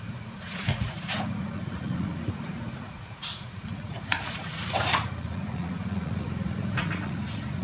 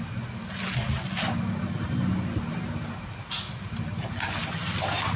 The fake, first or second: first